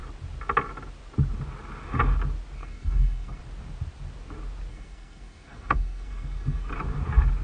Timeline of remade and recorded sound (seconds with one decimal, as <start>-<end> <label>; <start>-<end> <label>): 0.0-2.6 recorded; 2.6-3.4 remade; 3.4-4.7 recorded; 4.7-6.7 remade; 6.7-7.4 recorded